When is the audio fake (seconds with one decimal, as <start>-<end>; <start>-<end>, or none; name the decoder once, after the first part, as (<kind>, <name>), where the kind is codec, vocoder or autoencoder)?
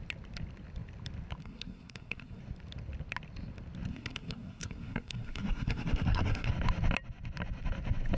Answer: 1.4-2.4 (codec, SNAC); 3.9-6.5